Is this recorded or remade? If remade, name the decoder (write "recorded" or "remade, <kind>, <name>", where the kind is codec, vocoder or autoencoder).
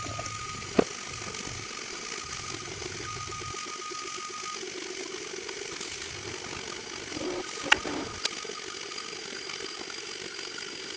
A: recorded